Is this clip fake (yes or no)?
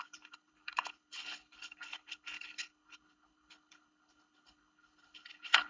yes